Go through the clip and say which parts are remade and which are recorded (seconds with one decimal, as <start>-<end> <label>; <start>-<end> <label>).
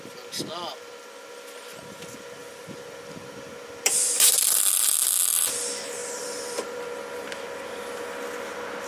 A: 0.0-2.4 recorded; 2.4-4.7 remade; 4.7-6.0 recorded; 6.0-7.4 remade; 7.4-8.9 recorded